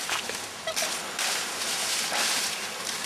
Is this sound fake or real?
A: fake